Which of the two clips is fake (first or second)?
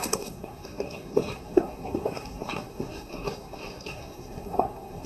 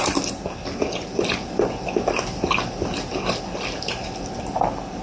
first